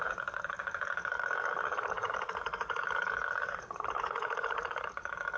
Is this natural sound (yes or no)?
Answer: no